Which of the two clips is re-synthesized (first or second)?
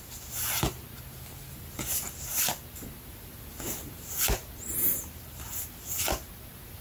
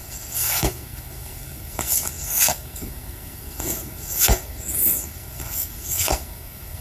second